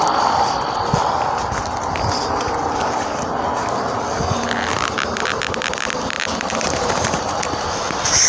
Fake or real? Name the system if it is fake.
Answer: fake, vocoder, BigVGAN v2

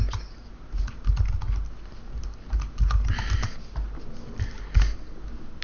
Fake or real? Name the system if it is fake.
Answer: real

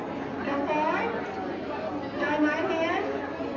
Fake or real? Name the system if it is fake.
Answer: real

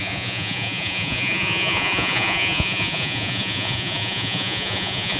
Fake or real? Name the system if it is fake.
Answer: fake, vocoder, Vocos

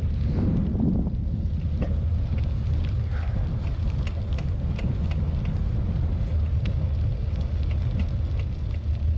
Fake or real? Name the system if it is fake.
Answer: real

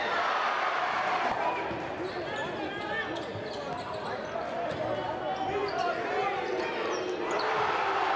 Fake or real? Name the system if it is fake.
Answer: real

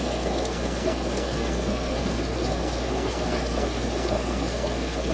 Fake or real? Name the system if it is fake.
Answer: fake, codec, SNAC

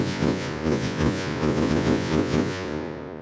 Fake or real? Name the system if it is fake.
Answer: fake, vocoder, Vocos